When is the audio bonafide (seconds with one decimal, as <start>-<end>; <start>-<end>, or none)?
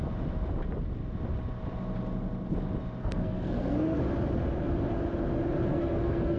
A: 0.0-3.0; 4.0-5.7